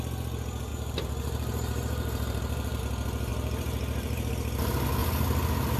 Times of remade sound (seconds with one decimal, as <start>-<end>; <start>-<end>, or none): 0.7-2.8; 3.3-4.3